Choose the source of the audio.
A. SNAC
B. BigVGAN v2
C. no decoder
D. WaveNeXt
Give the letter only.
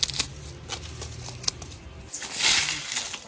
C